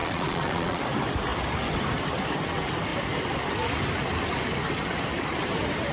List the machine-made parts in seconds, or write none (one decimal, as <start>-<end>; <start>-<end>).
0.0-0.8